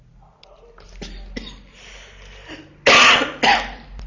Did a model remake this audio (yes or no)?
no